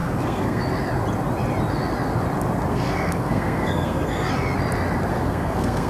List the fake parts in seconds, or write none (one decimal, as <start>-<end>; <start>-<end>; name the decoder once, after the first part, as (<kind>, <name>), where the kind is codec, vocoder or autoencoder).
0.0-0.6 (codec, SNAC); 2.7-4.3; 5.1-5.9